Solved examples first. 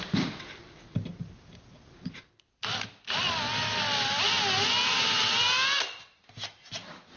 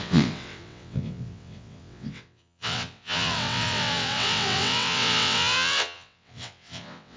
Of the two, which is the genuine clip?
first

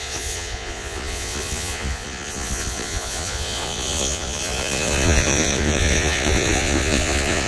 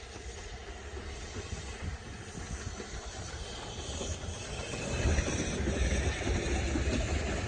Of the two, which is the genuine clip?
second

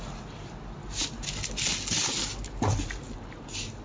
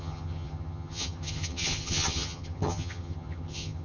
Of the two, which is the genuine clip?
first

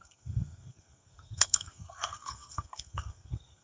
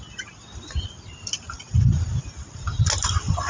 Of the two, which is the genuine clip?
second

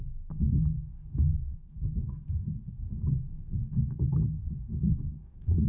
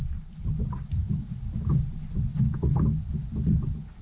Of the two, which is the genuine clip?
second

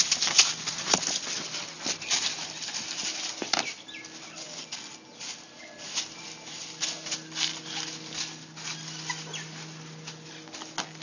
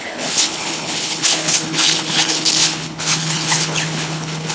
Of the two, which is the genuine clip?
first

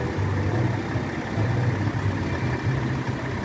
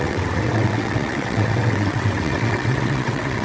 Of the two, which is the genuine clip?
first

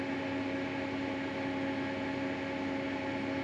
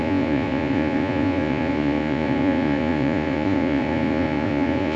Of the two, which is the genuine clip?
first